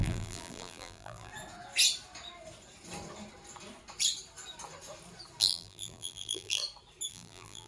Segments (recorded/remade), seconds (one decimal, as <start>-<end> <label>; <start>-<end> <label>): 0.0-1.3 remade; 1.3-5.4 recorded; 5.4-6.6 remade; 6.6-7.1 recorded; 7.1-7.7 remade